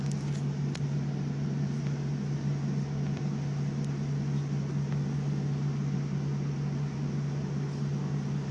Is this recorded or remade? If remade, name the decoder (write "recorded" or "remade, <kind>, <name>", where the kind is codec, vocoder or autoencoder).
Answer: recorded